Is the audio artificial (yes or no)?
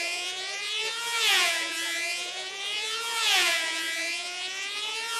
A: yes